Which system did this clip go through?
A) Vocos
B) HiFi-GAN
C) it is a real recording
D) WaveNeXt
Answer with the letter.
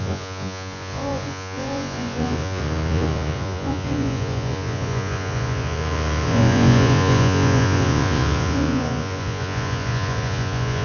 A